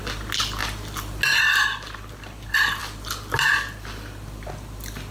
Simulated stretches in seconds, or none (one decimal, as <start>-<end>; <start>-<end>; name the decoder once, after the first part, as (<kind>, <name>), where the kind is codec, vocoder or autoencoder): none